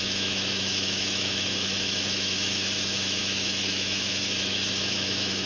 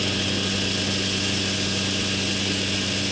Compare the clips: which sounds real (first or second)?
second